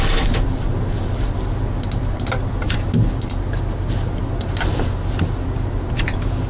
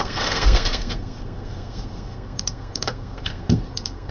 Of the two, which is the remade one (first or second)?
second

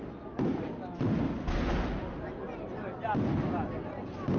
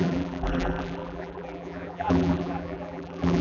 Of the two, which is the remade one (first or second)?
second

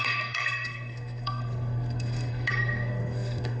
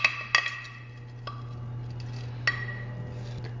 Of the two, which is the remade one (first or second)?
first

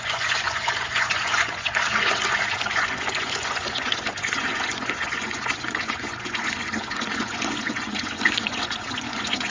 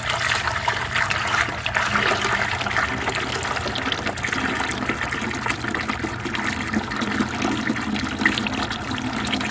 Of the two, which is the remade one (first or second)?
first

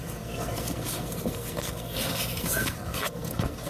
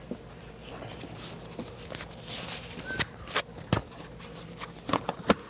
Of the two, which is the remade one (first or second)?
first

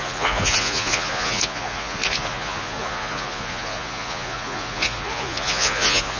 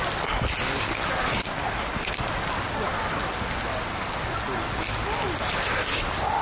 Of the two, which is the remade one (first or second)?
first